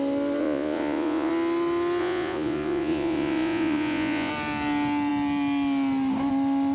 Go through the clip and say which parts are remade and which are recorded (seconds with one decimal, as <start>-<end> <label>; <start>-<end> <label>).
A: 0.0-0.4 recorded; 0.4-1.3 remade; 1.3-2.0 recorded; 2.0-4.3 remade; 4.3-6.7 recorded